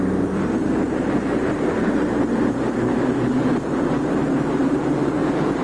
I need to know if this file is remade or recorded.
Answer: remade